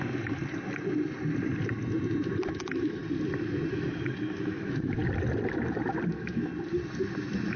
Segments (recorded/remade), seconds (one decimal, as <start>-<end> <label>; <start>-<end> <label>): 0.0-0.4 remade; 0.4-2.6 recorded; 2.6-3.0 remade; 3.0-3.7 recorded; 3.7-5.0 remade; 5.0-6.1 recorded; 6.1-6.5 remade; 6.5-7.6 recorded